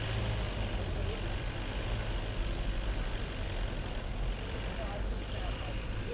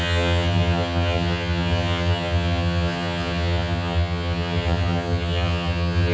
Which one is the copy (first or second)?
second